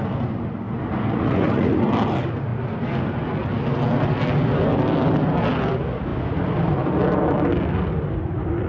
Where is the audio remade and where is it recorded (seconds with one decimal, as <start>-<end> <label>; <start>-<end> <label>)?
0.0-1.1 recorded; 1.1-1.8 remade; 1.8-8.7 recorded